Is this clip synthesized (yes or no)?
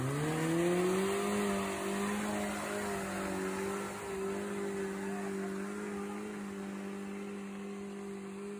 no